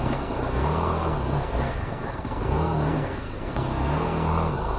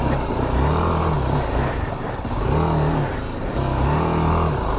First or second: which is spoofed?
first